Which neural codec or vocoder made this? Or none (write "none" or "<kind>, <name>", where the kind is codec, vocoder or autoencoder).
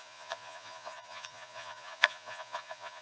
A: vocoder, Vocos